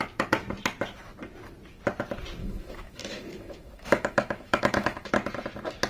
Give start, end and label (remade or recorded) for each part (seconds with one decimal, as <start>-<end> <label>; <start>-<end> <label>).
0.0-2.4 recorded; 2.4-5.1 remade; 5.1-5.9 recorded